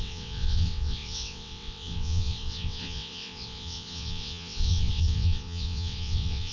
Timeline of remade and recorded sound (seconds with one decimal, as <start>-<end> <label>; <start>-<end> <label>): 0.0-6.5 remade

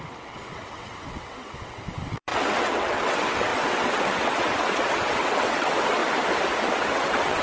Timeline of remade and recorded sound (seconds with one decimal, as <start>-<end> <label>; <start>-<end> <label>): 0.0-6.0 remade; 6.0-6.6 recorded; 6.6-7.4 remade

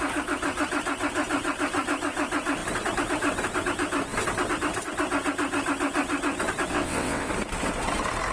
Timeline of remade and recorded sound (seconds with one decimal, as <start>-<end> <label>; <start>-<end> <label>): 0.0-6.7 recorded; 6.7-7.3 remade; 7.3-8.3 recorded

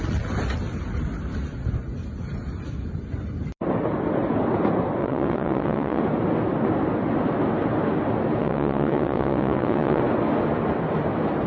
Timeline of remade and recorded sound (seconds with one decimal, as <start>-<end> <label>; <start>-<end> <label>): 0.0-5.0 recorded; 5.0-6.0 remade; 6.0-8.4 recorded; 8.4-10.0 remade; 10.0-11.5 recorded